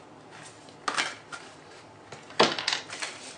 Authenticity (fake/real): real